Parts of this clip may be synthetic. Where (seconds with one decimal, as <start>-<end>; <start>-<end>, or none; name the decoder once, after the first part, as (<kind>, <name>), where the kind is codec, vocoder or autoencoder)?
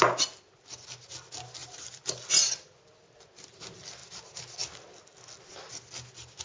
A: none